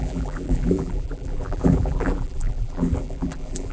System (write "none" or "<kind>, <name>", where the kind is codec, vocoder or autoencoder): vocoder, BigVGAN v2